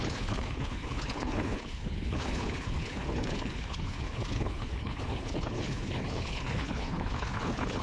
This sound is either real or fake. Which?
fake